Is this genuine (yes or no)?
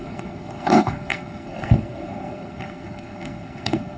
no